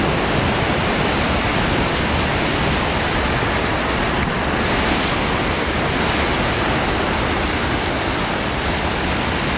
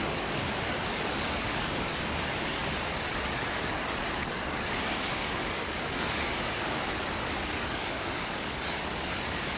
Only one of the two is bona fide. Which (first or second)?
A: first